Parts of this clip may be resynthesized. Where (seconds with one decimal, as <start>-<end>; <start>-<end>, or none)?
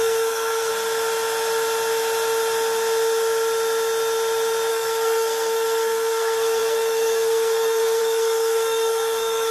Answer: 0.0-0.7; 4.7-9.5